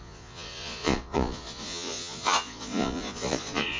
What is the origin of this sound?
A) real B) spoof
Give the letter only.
B